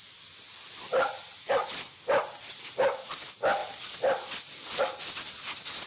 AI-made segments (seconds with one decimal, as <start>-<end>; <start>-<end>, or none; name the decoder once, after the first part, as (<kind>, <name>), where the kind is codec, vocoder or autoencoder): none